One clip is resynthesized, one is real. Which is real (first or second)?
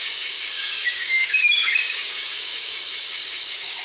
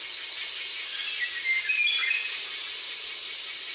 second